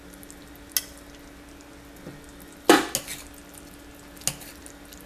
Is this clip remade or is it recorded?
recorded